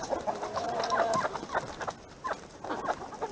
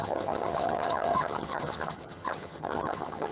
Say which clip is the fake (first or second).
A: second